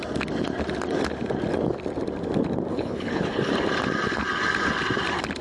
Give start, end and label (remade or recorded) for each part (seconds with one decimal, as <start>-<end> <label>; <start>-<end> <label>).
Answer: 0.0-2.7 recorded; 2.7-3.5 remade; 3.5-5.4 recorded